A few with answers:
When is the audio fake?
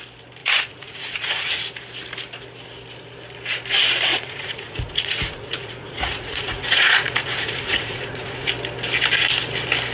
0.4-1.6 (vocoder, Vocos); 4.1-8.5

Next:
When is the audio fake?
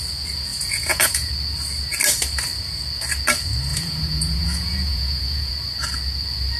0.5-1.3 (vocoder, Vocos); 3.7-5.5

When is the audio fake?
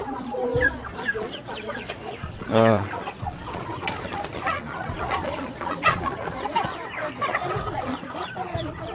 0.0-6.7 (vocoder, Vocos); 7.2-8.9